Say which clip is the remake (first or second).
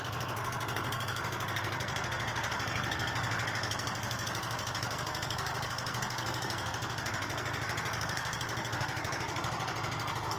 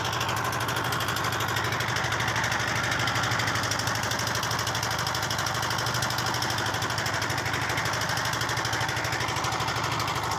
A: first